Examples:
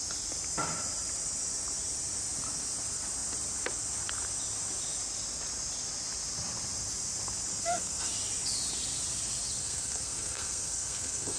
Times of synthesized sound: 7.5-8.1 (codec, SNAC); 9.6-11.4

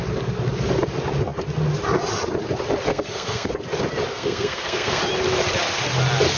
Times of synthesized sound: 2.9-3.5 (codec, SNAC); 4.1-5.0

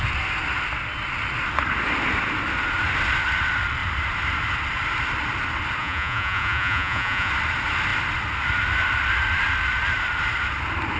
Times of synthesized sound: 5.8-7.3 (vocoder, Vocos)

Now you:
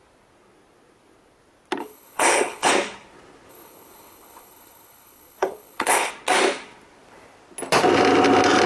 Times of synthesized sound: 1.8-2.7 (codec, HILCodec); 3.5-6.1